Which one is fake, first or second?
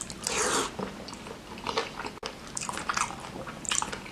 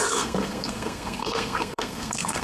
second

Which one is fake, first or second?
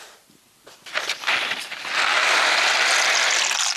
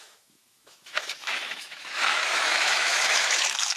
second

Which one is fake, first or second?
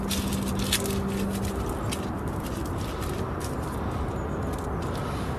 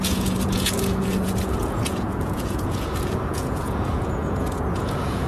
second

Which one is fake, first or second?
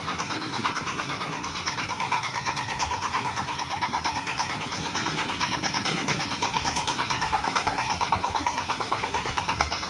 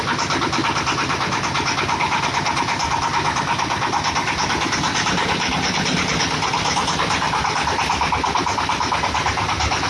first